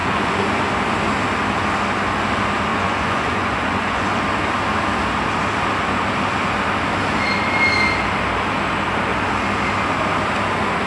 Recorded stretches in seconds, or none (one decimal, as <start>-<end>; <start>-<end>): 0.6-2.7; 4.2-10.9